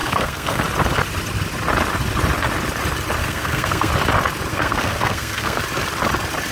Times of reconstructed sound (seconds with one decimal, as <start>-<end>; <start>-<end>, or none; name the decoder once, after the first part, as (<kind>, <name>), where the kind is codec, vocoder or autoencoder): 0.0-0.6 (codec, SNAC); 3.2-3.9; 4.5-5.6